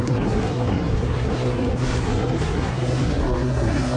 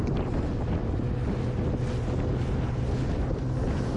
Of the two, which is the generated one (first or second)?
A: first